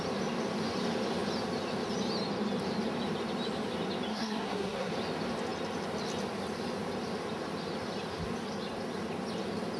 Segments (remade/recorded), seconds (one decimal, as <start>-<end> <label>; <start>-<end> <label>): 0.0-4.1 recorded; 4.1-4.9 remade; 4.9-9.8 recorded